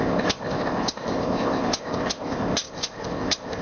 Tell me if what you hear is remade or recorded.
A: remade